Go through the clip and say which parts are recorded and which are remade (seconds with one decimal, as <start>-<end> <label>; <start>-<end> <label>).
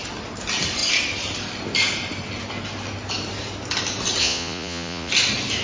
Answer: 0.0-4.2 recorded; 4.2-5.1 remade; 5.1-5.6 recorded